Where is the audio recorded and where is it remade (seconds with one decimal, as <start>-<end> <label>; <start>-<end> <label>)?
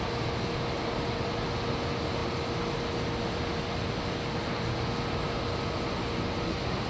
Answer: 0.0-6.9 recorded